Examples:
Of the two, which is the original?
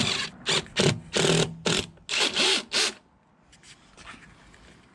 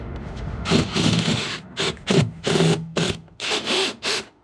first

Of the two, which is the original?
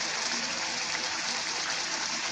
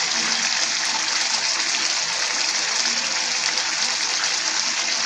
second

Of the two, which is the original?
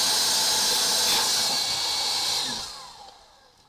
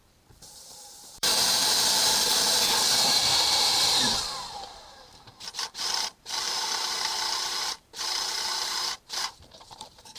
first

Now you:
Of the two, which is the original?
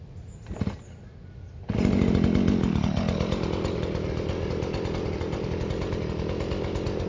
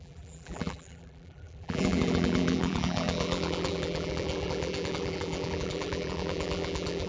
first